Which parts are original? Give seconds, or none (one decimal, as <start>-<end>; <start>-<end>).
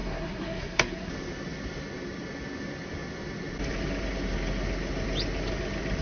1.1-6.0